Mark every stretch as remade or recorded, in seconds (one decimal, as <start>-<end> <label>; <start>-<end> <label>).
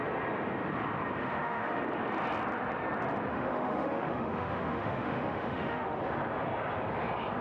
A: 0.0-1.2 recorded; 1.2-1.8 remade; 1.8-3.3 recorded; 3.3-6.0 remade; 6.0-7.4 recorded